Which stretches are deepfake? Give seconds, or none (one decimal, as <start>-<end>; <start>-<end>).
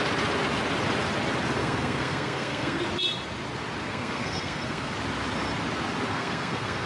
1.6-2.8; 3.8-4.9; 6.1-6.9